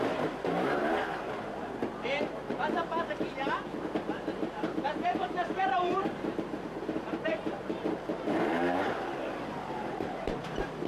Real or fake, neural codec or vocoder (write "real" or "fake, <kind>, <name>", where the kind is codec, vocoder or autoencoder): fake, vocoder, BigVGAN v2